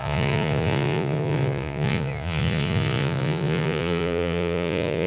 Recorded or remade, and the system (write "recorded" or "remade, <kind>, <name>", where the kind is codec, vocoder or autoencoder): remade, vocoder, Vocos